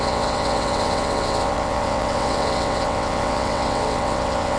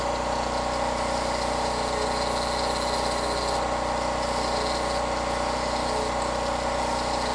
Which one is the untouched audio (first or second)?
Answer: second